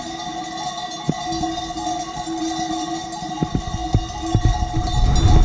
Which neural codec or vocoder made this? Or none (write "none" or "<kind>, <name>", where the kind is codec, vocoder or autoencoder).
none